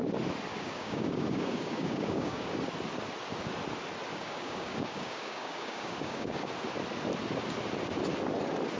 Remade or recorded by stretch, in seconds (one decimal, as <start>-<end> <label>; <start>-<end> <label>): 0.0-0.5 recorded; 0.5-2.5 remade; 2.5-4.1 recorded; 4.1-6.5 remade; 6.5-8.8 recorded